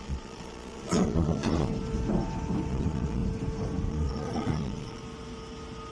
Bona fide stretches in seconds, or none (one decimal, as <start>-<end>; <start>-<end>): 1.7-2.7; 3.2-3.9; 5.0-5.9